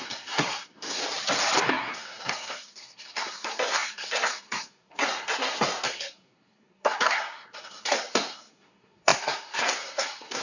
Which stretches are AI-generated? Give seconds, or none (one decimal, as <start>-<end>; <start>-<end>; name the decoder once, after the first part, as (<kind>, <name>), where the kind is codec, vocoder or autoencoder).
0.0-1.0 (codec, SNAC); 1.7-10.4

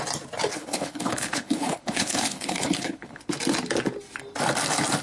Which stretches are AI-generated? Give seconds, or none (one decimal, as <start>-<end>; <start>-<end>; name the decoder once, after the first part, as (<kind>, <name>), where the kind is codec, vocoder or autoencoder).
0.5-3.2 (codec, HILCodec)

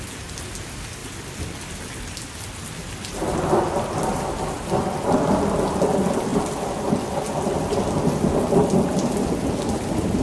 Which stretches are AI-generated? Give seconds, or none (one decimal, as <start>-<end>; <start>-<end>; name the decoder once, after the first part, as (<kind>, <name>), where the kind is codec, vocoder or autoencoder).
none

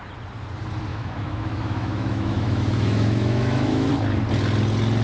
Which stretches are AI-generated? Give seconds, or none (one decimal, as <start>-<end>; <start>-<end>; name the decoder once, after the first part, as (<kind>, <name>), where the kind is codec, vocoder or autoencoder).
0.9-3.9 (autoencoder, DAC-VAE)

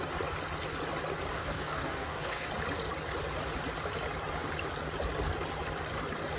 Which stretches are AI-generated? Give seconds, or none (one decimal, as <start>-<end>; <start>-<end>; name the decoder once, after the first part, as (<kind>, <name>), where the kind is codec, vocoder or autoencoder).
1.3-2.5 (codec, DAC)